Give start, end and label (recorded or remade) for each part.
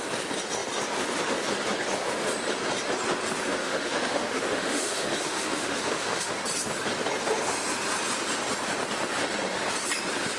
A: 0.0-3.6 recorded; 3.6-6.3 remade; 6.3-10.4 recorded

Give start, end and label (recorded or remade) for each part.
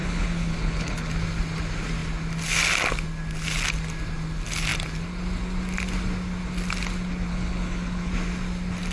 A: 0.0-1.1 remade; 1.1-7.3 recorded; 7.3-8.1 remade; 8.1-8.9 recorded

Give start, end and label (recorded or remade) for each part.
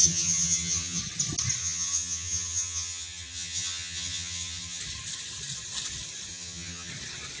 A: 0.0-1.0 remade; 1.0-1.6 recorded; 1.6-4.8 remade; 4.8-6.3 recorded; 6.3-6.9 remade; 6.9-7.4 recorded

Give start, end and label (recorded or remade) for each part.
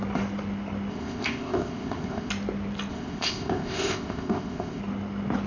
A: 0.0-0.9 recorded; 0.9-2.3 remade; 2.3-2.9 recorded; 2.9-4.8 remade; 4.8-5.5 recorded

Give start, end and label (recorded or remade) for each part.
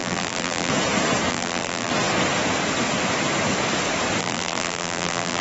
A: 0.0-0.7 remade; 0.7-1.3 recorded; 1.3-1.9 remade; 1.9-4.2 recorded; 4.2-5.4 remade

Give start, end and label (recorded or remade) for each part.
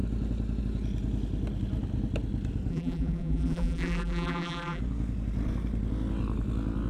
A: 0.0-2.7 recorded; 2.7-4.8 remade; 4.8-6.9 recorded